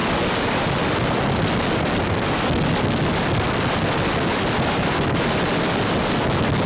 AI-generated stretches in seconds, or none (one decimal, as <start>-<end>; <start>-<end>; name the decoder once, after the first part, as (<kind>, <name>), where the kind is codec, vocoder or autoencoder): none